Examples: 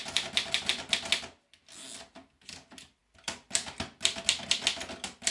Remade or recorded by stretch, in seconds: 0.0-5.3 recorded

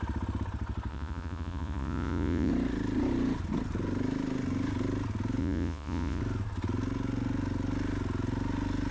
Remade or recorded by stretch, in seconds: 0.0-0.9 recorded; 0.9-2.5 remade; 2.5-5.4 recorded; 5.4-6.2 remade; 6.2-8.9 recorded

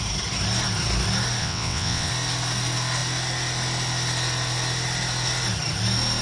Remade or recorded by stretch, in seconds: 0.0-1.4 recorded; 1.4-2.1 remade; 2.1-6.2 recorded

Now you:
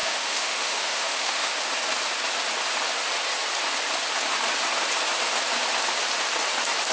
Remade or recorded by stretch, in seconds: 0.0-1.5 remade; 1.5-6.9 recorded